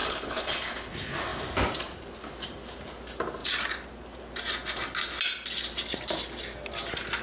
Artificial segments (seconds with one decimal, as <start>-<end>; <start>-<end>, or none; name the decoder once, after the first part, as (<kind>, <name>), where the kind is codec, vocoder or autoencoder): 0.0-0.9 (codec, HILCodec)